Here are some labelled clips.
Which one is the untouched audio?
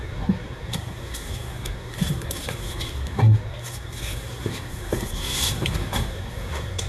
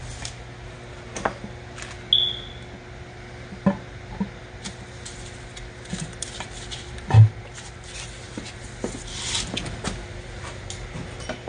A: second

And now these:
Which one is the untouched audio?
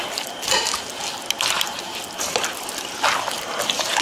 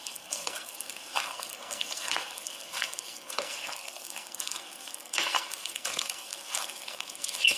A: first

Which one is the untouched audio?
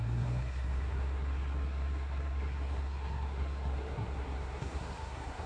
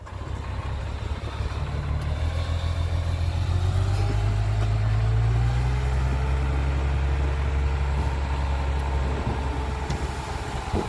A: second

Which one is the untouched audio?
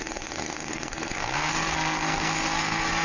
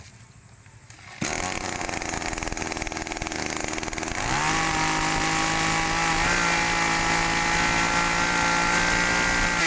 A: second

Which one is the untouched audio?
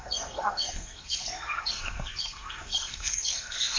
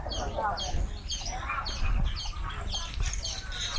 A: second